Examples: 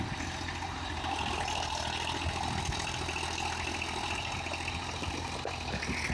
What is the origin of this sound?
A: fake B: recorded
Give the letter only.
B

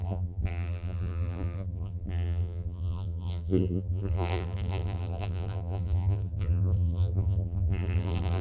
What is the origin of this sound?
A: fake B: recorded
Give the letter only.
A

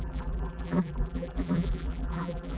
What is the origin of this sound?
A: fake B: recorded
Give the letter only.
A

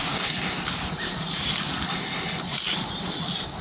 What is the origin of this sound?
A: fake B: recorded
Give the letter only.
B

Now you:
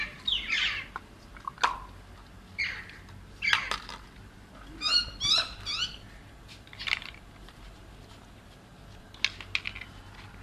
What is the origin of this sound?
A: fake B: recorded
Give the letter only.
B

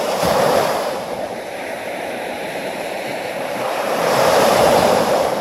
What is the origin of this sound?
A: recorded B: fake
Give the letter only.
B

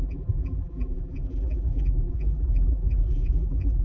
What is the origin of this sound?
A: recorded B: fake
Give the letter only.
B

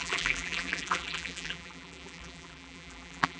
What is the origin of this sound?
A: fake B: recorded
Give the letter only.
A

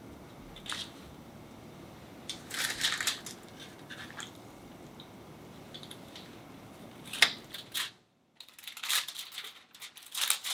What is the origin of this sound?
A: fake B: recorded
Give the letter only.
B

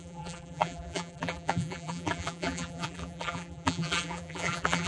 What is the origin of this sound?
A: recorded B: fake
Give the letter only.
B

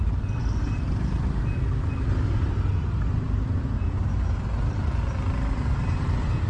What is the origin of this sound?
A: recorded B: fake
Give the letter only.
A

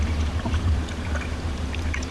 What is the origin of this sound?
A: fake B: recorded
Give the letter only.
A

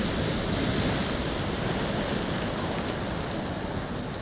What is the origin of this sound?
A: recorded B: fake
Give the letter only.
A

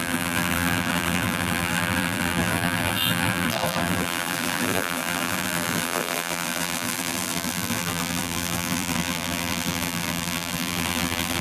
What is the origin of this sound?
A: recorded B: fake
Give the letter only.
B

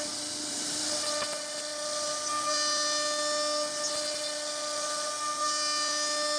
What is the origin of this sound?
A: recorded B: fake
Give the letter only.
A